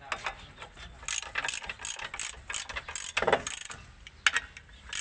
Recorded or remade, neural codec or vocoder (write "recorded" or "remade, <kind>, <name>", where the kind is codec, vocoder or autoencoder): recorded